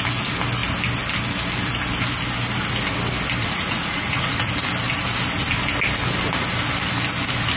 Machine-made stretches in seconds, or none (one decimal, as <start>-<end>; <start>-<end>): 3.4-4.5